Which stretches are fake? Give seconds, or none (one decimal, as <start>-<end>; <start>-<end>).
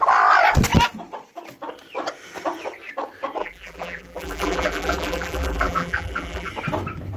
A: 3.4-6.5